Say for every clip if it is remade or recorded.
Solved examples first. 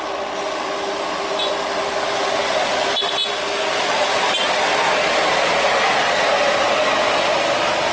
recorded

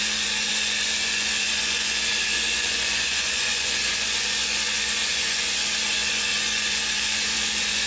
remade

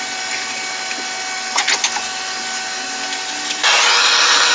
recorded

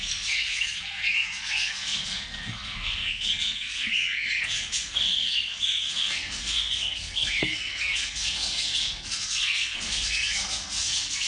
remade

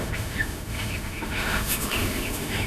remade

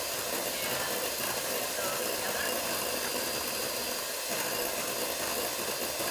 recorded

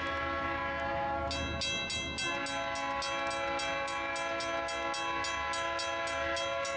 recorded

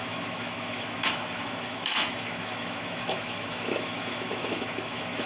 remade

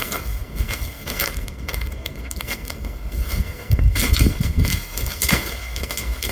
remade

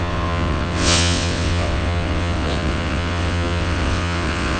remade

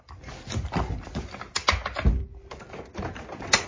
recorded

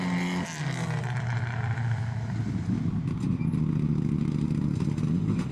recorded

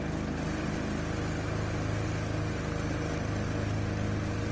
recorded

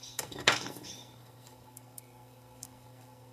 remade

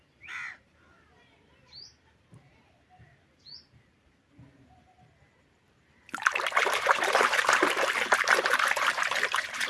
remade